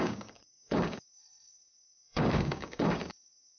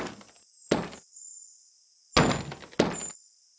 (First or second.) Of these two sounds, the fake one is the first